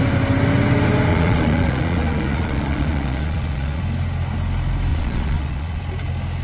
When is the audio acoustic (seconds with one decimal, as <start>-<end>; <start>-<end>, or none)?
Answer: 0.0-1.1; 3.8-4.9; 5.8-6.4